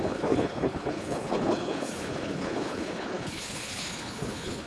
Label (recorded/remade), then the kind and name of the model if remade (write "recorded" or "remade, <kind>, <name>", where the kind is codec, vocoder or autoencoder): remade, codec, HILCodec